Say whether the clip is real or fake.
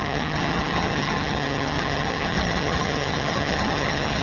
fake